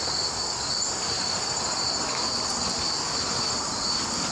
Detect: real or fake real